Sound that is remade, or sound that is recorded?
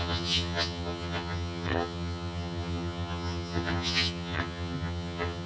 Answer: remade